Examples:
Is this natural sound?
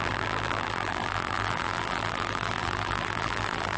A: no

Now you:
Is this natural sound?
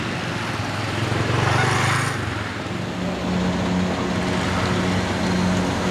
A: yes